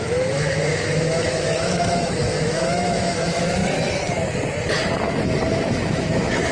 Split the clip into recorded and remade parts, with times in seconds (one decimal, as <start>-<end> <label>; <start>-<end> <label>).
0.0-3.6 remade; 3.6-5.5 recorded; 5.5-6.5 remade